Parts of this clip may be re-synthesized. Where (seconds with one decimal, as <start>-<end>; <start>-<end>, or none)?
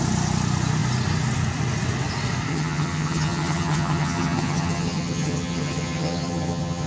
2.5-6.9